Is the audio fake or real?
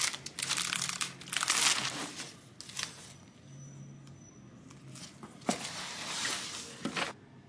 real